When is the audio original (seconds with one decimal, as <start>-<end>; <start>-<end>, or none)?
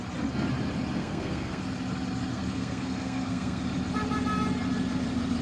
0.0-1.0; 1.6-2.3; 3.6-5.4